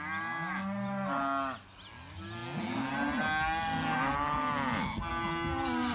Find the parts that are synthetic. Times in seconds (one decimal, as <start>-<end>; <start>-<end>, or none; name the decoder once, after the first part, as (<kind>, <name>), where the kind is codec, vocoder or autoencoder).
none